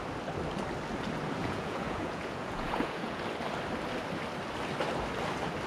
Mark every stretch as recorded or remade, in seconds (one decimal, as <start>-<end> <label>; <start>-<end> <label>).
0.0-1.4 recorded; 1.4-3.2 remade; 3.2-5.7 recorded